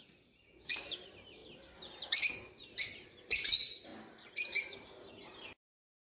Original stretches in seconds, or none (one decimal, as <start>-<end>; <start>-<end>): 1.4-3.1; 3.9-4.7